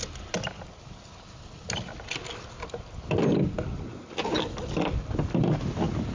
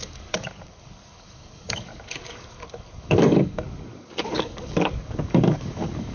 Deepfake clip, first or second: second